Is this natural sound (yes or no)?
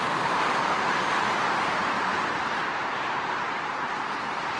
no